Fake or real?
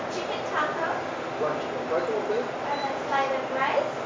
real